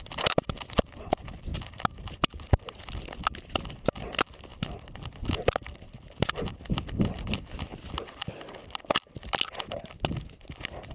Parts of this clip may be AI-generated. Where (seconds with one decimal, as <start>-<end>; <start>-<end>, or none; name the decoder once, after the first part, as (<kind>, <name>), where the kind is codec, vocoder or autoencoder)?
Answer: none